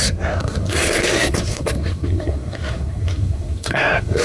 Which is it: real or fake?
fake